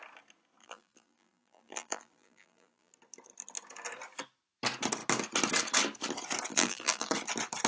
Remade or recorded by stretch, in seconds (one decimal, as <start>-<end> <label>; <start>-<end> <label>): 0.0-0.6 recorded; 0.6-2.9 remade; 2.9-6.5 recorded; 6.5-7.1 remade; 7.1-7.7 recorded